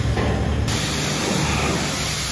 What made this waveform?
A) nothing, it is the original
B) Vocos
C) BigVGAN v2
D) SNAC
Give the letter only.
A